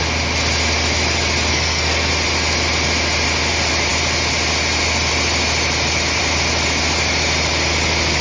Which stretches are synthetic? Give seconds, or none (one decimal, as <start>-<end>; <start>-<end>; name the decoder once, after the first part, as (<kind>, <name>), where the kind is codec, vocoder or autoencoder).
1.5-2.1 (codec, SNAC)